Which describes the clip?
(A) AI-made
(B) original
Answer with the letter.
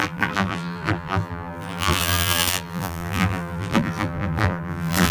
A